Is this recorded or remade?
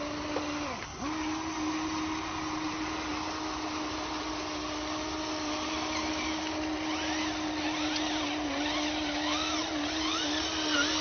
recorded